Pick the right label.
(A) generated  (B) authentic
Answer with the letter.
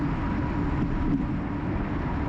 B